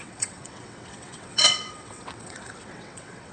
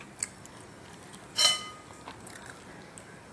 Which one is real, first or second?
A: second